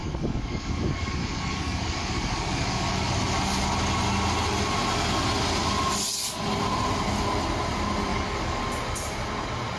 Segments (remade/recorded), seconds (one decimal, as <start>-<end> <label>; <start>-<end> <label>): 0.0-3.1 remade; 3.1-8.1 recorded; 8.1-8.6 remade; 8.6-9.8 recorded